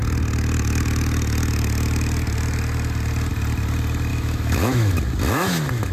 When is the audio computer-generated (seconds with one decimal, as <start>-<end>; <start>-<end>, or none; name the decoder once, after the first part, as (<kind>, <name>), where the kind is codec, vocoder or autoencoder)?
4.1-5.0 (autoencoder, DAC-VAE)